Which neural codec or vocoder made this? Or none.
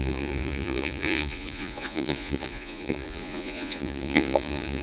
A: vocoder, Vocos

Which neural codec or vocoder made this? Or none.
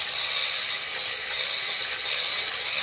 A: none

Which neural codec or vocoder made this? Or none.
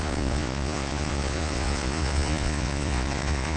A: vocoder, Vocos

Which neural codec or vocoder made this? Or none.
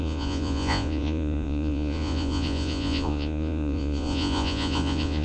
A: vocoder, Vocos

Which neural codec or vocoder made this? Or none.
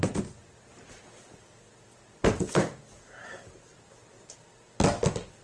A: none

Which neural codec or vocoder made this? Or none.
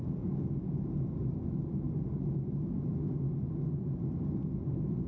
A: none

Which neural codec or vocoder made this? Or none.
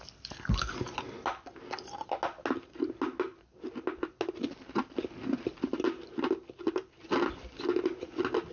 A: none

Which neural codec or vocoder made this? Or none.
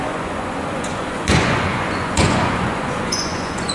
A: vocoder, Vocos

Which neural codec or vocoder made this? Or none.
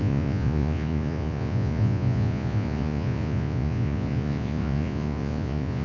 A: vocoder, Vocos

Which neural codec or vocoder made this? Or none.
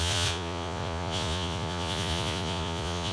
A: vocoder, Vocos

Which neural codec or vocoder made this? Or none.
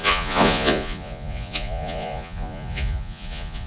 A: vocoder, Vocos